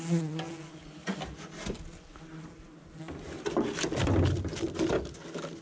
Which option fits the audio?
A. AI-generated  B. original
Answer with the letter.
B